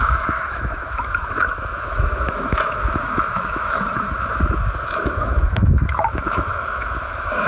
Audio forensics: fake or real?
fake